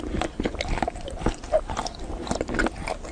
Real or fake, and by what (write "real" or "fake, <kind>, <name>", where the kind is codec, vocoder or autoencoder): real